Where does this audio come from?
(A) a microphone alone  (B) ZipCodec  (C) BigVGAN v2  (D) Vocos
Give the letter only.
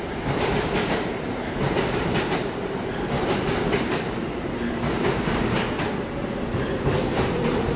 C